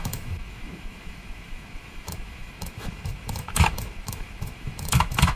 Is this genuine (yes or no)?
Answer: no